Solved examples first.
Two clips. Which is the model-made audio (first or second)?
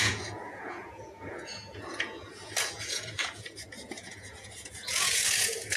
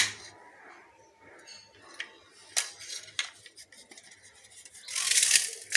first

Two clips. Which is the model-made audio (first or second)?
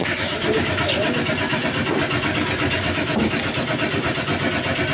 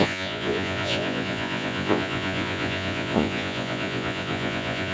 second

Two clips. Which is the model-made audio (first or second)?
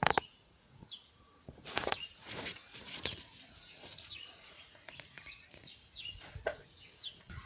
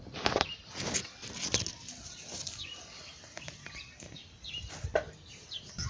first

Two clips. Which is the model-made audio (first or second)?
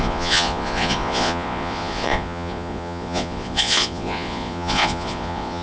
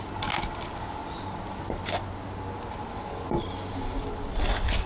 first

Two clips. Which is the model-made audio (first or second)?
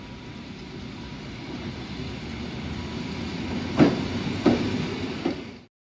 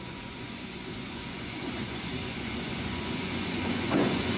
second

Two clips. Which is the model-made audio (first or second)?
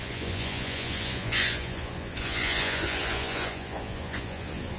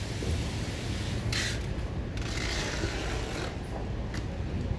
first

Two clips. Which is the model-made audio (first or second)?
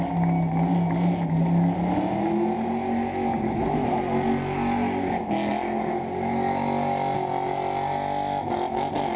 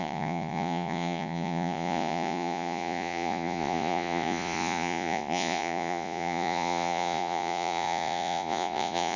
second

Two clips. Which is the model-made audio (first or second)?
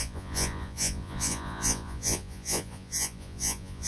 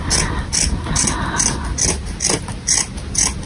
first